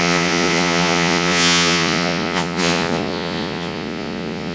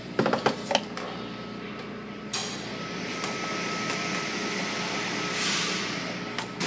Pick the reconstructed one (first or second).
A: first